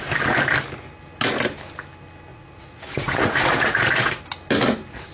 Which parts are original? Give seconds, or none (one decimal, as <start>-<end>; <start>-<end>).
0.0-2.3; 4.2-5.1